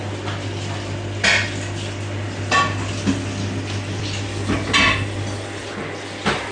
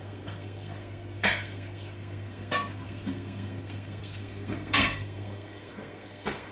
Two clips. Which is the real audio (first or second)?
first